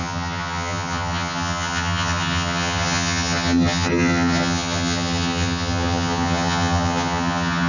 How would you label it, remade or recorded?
remade